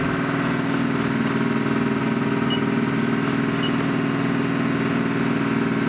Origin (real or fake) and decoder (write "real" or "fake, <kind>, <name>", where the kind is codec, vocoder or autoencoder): real